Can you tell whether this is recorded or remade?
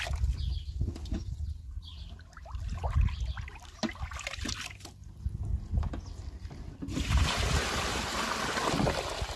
recorded